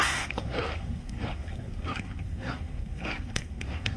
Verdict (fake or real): fake